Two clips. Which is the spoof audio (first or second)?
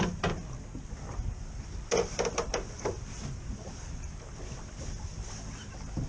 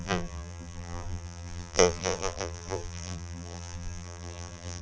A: second